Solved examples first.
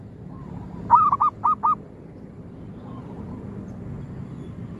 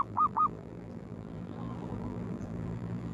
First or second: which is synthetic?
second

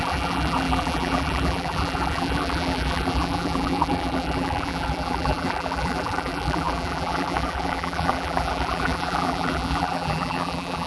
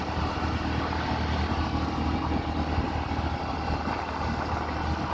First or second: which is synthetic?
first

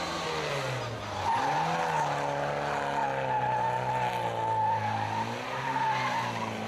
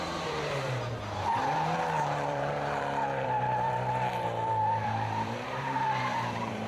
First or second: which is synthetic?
second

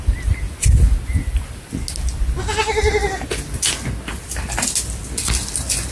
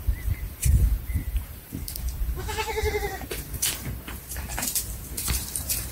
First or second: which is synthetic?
second